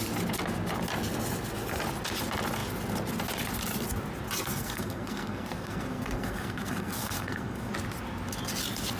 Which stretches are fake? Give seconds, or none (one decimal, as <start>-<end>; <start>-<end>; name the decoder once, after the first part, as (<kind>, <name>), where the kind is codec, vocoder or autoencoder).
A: 4.5-7.7 (codec, SNAC)